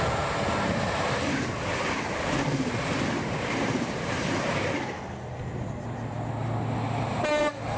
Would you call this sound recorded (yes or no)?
yes